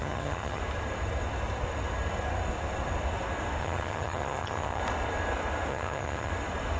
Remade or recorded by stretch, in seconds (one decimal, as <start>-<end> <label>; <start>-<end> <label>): 0.0-0.6 remade; 0.6-3.6 recorded; 3.6-4.8 remade; 4.8-5.7 recorded; 5.7-6.3 remade; 6.3-6.8 recorded